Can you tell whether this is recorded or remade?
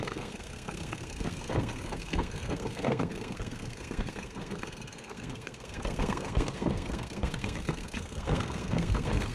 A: remade